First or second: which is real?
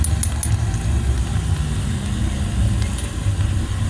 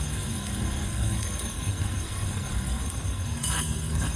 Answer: first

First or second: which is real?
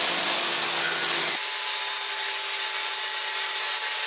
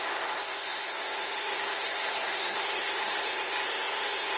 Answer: first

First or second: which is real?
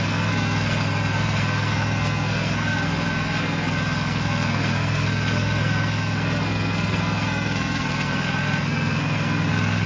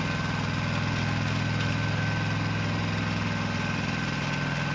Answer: second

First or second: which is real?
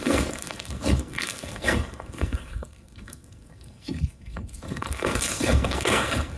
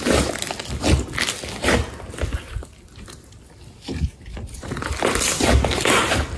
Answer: second